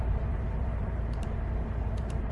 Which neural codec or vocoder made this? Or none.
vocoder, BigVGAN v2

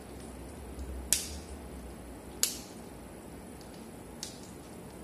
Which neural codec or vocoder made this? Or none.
none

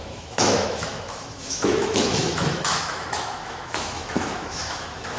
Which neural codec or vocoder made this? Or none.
autoencoder, DAC-VAE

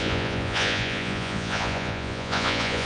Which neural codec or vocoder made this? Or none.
vocoder, Vocos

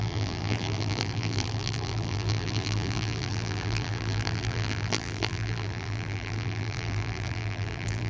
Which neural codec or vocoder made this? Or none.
vocoder, BigVGAN v2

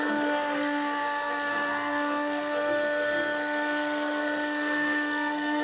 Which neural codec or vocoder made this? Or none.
codec, SNAC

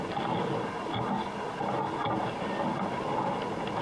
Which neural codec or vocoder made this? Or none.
none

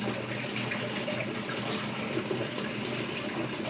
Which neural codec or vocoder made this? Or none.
none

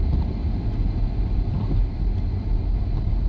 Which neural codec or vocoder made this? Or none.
none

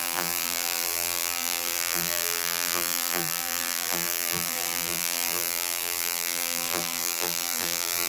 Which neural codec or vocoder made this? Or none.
vocoder, BigVGAN v2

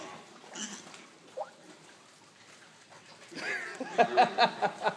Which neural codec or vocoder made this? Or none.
none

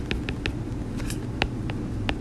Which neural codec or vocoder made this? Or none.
none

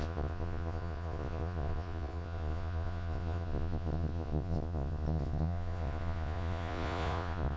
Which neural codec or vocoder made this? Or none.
vocoder, Vocos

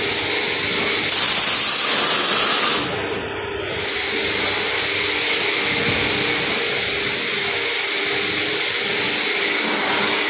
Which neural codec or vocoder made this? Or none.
none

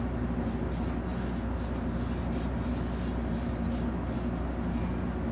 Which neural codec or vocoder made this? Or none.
none